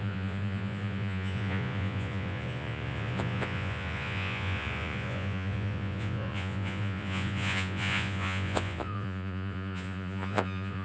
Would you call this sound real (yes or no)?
no